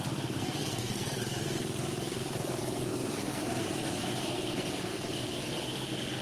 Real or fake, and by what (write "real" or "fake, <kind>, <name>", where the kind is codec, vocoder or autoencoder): fake, codec, SNAC